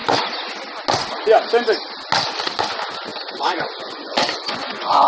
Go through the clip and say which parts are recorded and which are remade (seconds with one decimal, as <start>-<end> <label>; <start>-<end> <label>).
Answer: 0.0-3.1 recorded; 3.1-5.1 remade